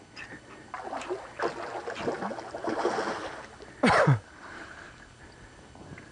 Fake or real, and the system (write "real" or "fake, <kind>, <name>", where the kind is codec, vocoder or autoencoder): real